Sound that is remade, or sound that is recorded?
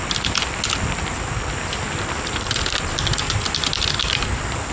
recorded